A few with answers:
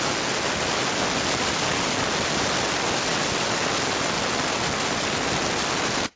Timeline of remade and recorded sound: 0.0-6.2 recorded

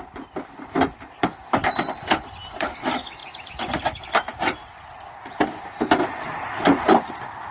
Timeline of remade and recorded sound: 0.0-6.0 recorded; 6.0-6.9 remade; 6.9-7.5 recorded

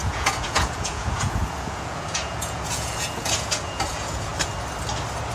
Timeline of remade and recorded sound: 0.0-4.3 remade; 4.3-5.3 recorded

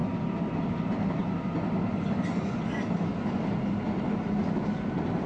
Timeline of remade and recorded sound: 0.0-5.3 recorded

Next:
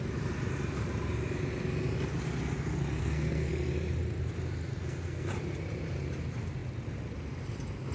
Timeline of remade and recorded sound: 0.0-3.0 recorded; 3.0-3.5 remade; 3.5-4.7 recorded; 4.7-5.3 remade; 5.3-7.9 recorded